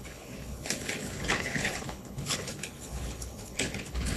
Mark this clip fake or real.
fake